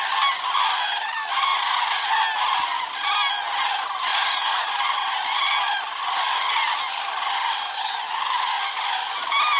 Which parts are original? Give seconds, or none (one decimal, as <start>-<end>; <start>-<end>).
0.0-1.5; 2.1-4.1; 4.7-9.6